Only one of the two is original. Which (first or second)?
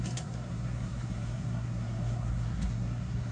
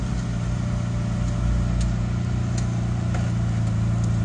second